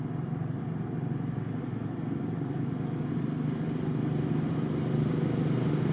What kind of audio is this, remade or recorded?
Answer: recorded